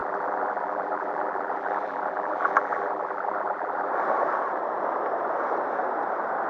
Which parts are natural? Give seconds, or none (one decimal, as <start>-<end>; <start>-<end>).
3.9-6.5